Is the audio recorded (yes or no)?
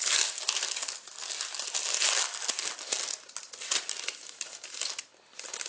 yes